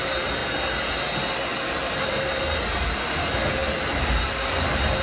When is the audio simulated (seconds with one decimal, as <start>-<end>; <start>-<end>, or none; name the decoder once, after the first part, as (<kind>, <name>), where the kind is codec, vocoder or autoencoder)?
0.0-0.4 (vocoder, BigVGAN v2); 0.9-5.0